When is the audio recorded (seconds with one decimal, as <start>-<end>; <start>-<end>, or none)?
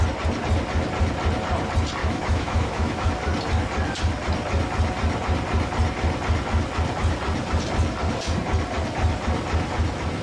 0.0-2.0; 3.1-10.2